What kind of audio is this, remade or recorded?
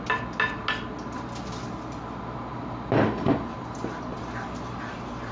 recorded